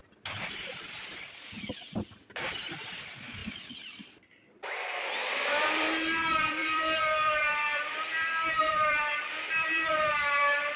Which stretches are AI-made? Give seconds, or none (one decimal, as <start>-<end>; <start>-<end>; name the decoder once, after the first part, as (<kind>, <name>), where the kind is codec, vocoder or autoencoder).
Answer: 0.0-10.8 (vocoder, BigVGAN v2)